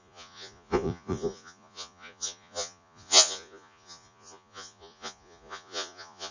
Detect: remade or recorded remade